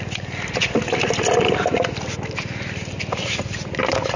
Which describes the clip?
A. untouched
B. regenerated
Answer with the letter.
A